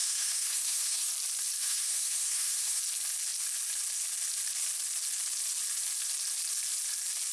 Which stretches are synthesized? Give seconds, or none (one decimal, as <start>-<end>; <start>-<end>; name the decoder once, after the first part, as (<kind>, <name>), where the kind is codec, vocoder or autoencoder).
0.0-1.1 (codec, SNAC); 1.6-2.8